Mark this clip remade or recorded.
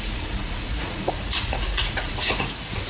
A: remade